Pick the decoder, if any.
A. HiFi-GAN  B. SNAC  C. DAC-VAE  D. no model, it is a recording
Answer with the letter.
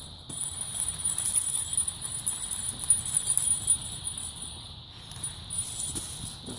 D